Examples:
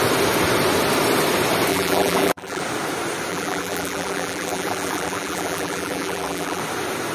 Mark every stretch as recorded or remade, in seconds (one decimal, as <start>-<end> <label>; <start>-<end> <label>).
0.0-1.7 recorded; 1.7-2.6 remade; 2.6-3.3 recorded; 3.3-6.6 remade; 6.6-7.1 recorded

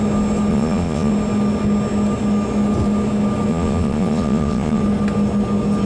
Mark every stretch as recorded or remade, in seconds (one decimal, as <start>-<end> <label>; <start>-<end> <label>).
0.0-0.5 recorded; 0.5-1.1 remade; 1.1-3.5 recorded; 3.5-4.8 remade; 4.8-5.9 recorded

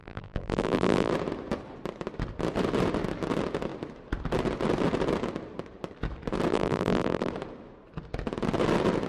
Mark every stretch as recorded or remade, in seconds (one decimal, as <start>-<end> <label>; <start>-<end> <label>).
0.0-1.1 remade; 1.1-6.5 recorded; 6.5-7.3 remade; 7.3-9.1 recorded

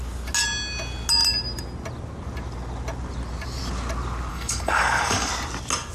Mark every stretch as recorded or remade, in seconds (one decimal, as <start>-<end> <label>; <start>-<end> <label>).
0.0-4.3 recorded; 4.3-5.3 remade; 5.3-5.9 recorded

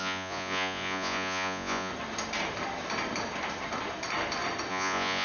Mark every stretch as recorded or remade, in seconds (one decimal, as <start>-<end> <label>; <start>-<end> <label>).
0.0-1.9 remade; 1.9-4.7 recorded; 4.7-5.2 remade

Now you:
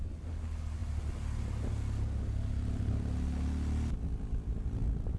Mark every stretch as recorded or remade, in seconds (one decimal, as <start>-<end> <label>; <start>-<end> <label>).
0.0-5.2 recorded

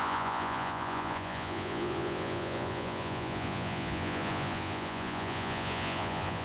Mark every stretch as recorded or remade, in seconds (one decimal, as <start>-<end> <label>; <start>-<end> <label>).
0.0-6.4 remade